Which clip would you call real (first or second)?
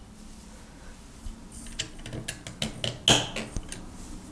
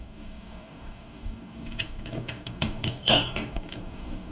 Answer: first